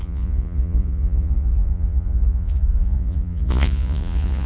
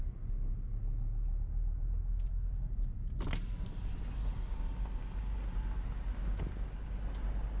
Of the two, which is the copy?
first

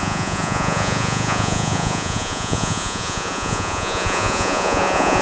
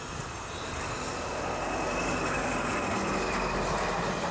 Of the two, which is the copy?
first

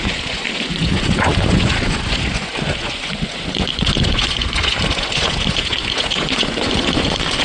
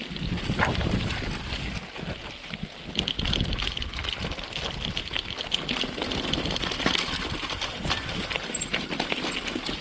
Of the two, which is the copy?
first